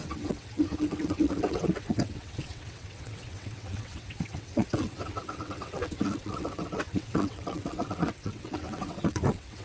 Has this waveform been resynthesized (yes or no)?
yes